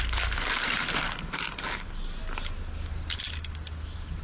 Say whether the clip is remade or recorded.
recorded